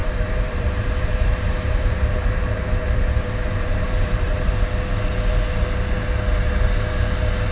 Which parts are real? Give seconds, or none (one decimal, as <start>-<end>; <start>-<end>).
4.5-7.5